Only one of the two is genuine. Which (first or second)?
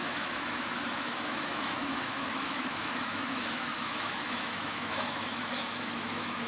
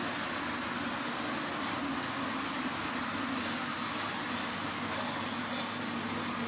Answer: second